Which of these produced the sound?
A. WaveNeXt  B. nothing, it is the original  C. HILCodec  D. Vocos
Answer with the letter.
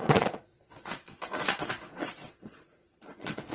D